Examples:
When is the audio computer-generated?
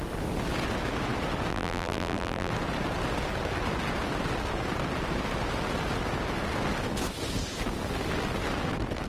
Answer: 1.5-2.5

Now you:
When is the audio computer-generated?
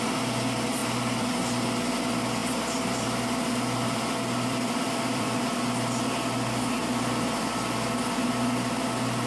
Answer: 0.8-1.3; 2.4-5.4